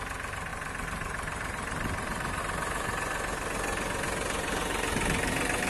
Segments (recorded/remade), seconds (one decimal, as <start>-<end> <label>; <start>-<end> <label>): 0.0-0.5 recorded; 0.5-2.4 remade; 2.4-5.7 recorded